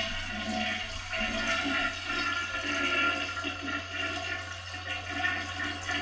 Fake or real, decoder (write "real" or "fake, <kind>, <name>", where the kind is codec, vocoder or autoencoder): real